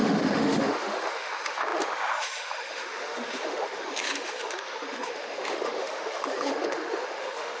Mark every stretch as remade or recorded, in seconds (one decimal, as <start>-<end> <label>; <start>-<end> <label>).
0.0-7.6 remade